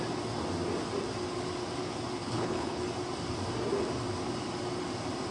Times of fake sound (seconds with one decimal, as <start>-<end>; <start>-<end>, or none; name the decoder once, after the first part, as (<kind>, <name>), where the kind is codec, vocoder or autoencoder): 2.2-2.8 (codec, HILCodec)